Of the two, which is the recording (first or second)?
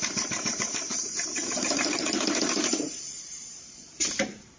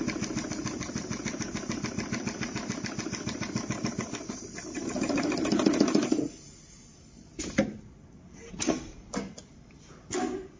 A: second